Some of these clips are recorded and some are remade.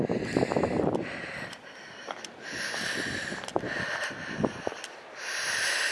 recorded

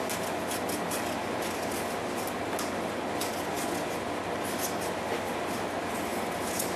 recorded